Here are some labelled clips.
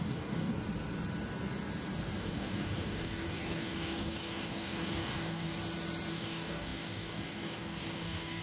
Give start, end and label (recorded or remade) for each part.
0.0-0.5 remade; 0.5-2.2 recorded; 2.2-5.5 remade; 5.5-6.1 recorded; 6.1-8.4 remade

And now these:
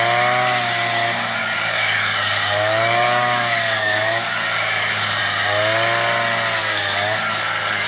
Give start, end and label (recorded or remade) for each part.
0.0-1.4 recorded; 1.4-5.2 remade; 5.2-6.6 recorded; 6.6-7.9 remade

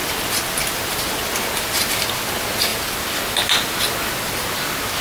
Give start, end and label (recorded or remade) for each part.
0.0-5.0 recorded

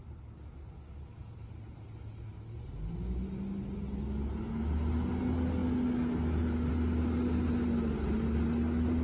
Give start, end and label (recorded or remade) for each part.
0.0-0.9 recorded; 0.9-1.5 remade; 1.5-9.0 recorded